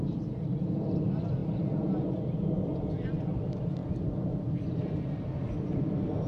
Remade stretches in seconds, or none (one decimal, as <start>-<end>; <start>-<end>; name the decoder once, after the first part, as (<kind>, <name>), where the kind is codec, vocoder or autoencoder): none